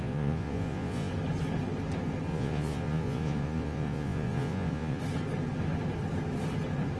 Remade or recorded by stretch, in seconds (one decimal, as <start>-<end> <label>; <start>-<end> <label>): 0.0-1.1 remade; 1.1-2.3 recorded; 2.3-5.0 remade; 5.0-7.0 recorded